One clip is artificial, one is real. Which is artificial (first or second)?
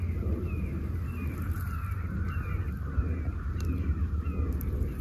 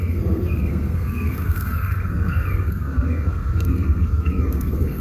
second